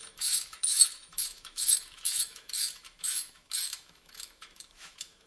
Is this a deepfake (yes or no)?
yes